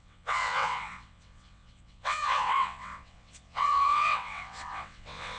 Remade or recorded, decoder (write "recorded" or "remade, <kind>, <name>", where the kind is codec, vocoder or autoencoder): remade, vocoder, WaveNeXt